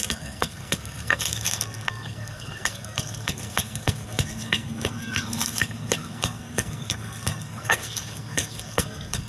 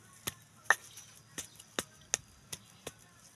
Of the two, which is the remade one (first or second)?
first